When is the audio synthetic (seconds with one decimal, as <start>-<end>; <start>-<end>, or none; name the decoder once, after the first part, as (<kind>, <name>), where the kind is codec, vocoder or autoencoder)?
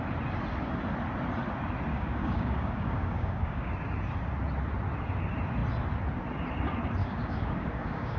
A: 1.9-3.7 (codec, DAC); 7.0-8.2